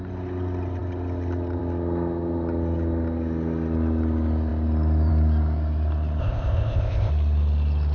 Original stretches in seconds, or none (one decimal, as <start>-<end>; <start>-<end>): 0.0-6.2; 7.1-7.9